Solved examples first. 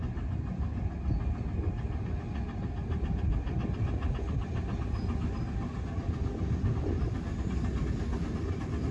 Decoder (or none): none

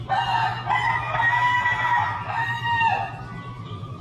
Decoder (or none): none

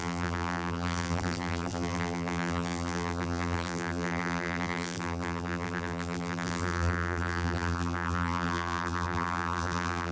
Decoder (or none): vocoder, BigVGAN v2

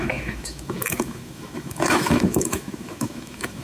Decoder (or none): autoencoder, DAC-VAE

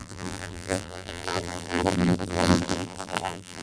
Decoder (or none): vocoder, BigVGAN v2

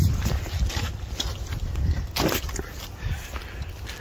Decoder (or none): none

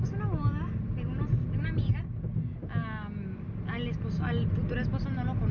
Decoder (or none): none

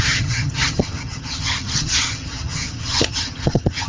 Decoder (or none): vocoder, HiFi-GAN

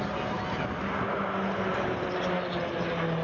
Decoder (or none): none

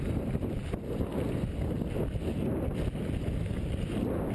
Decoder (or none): vocoder, BigVGAN v2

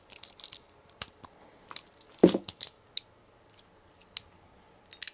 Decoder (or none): none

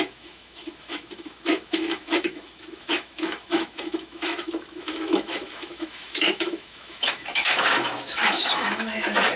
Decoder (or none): autoencoder, DAC-VAE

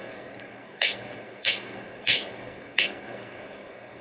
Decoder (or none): codec, SNAC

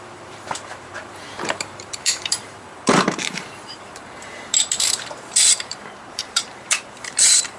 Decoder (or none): vocoder, BigVGAN v2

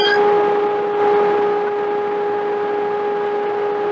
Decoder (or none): none